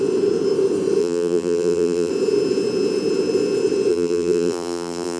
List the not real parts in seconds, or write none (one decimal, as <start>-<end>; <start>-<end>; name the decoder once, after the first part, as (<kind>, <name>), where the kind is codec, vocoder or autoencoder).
1.0-2.1 (vocoder, BigVGAN v2); 3.9-5.2